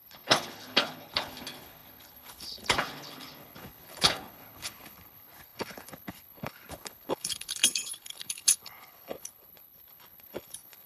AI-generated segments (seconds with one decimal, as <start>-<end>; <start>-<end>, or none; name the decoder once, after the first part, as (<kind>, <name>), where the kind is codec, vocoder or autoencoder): 0.0-10.9 (codec, HILCodec)